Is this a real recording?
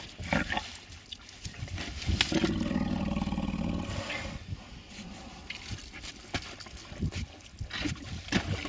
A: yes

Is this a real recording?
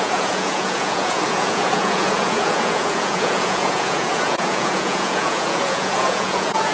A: no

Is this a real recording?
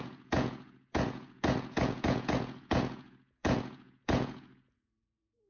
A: no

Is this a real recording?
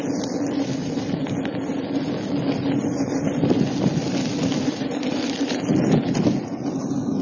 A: yes